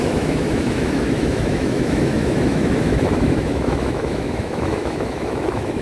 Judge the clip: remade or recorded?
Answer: remade